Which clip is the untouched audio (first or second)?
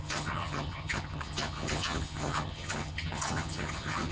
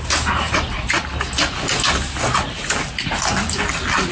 second